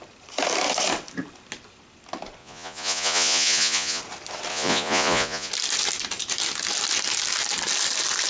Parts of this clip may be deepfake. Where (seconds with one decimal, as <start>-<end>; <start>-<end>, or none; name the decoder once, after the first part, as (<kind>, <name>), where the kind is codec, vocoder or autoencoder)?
2.4-4.0 (vocoder, Vocos); 4.5-5.5